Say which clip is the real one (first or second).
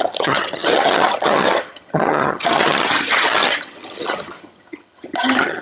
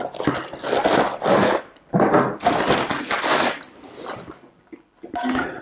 second